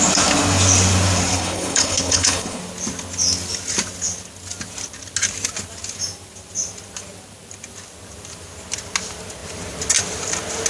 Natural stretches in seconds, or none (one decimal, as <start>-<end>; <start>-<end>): 0.0-1.3; 2.6-10.7